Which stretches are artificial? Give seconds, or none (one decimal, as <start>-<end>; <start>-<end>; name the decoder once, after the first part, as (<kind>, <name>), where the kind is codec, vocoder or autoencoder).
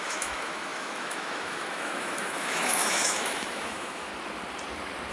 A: 0.0-4.1 (autoencoder, DAC-VAE)